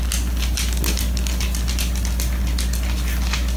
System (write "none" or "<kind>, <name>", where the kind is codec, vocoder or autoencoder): none